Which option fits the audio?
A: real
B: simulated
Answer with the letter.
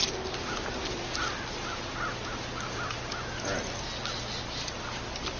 A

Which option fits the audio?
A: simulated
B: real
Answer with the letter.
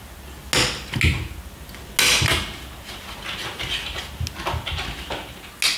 B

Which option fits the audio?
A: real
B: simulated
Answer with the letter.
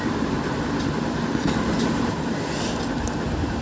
A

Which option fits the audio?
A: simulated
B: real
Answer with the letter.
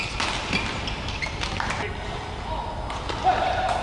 B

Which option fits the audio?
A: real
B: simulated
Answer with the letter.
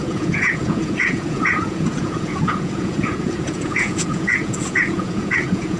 B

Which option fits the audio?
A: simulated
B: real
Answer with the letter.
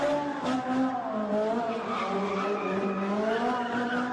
B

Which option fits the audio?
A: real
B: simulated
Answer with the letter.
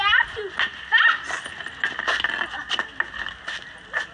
A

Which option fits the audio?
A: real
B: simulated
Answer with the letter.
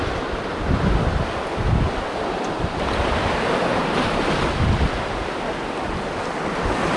A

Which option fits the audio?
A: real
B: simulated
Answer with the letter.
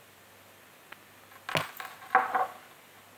A